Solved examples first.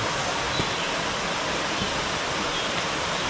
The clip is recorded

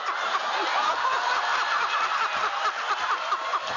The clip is recorded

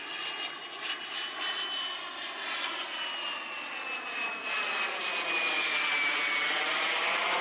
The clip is recorded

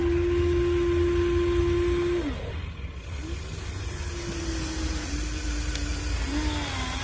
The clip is recorded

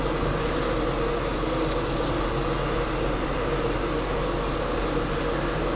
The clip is recorded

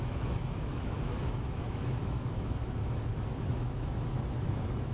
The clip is remade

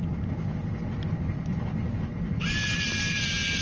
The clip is recorded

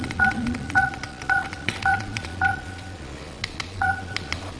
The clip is remade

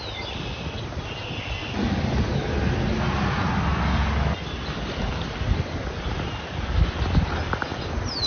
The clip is recorded